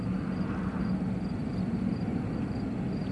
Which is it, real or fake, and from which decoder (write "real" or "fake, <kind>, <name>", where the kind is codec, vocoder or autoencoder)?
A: real